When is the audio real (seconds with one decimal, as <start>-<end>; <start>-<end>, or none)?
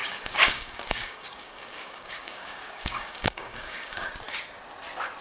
4.1-5.2